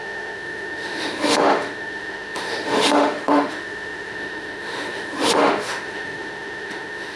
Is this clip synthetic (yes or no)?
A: yes